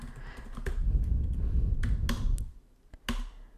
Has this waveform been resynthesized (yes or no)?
no